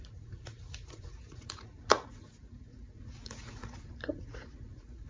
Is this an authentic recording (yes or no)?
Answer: no